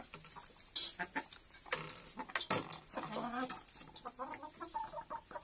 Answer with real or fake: real